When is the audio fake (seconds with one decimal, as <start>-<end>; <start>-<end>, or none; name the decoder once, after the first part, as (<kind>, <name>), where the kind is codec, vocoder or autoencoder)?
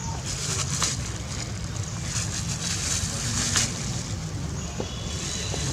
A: none